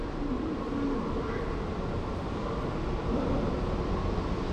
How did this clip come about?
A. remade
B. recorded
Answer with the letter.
B